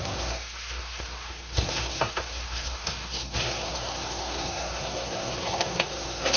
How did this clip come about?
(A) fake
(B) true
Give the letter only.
A